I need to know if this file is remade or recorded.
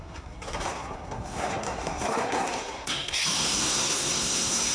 remade